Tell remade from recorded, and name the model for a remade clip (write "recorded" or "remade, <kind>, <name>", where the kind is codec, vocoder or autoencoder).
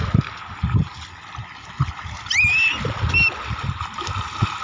recorded